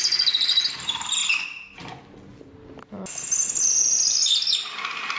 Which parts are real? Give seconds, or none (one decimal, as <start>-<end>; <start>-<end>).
0.0-5.2